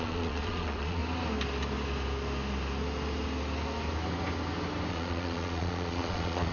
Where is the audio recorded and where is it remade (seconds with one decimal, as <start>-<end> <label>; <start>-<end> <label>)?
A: 0.0-1.0 remade; 1.0-4.9 recorded; 4.9-6.5 remade